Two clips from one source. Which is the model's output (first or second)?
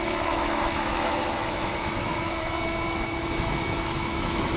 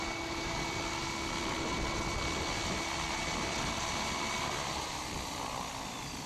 first